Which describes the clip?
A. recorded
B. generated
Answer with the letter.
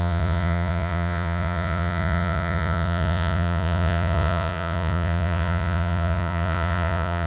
B